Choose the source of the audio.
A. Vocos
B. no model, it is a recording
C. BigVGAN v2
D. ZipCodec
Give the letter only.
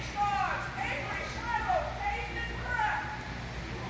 B